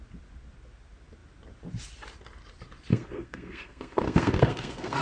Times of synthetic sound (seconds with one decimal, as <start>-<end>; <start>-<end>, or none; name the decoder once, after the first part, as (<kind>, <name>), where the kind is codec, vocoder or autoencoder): 2.9-5.0 (codec, SNAC)